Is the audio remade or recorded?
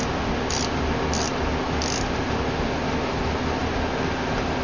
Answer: recorded